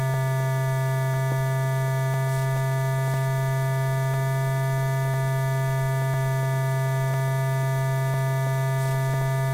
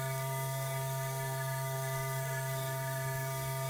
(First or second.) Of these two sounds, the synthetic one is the second